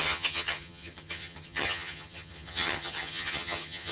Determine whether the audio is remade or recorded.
remade